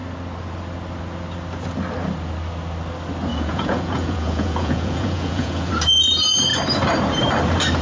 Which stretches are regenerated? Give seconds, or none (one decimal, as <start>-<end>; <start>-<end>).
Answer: 3.3-5.7